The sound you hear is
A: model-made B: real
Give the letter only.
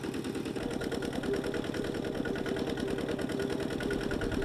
B